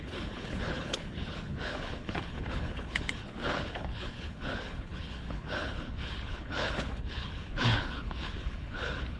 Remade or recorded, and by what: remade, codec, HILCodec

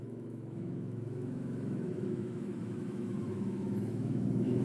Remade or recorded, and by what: remade, autoencoder, DAC-VAE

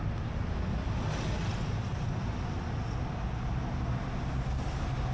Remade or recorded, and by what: recorded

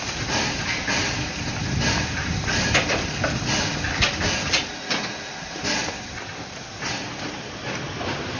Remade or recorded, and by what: recorded